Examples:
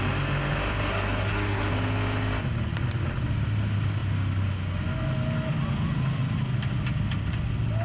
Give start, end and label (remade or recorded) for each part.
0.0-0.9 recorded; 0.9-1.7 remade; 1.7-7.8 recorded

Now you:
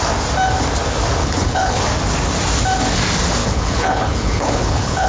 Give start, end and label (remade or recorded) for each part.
0.0-1.2 recorded; 1.2-1.8 remade; 1.8-3.4 recorded; 3.4-5.1 remade

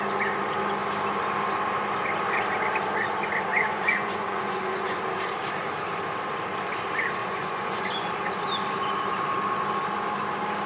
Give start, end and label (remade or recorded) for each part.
0.0-3.5 recorded; 3.5-5.0 remade; 5.0-7.2 recorded; 7.2-8.1 remade; 8.1-10.7 recorded

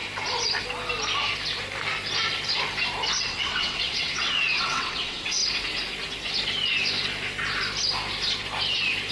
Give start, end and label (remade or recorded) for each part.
0.0-3.2 recorded; 3.2-5.4 remade; 5.4-9.1 recorded